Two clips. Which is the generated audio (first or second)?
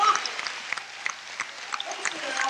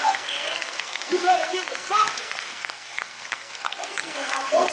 second